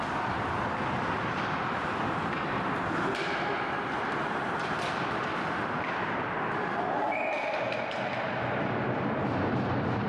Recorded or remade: remade